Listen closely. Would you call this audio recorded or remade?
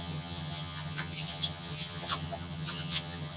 remade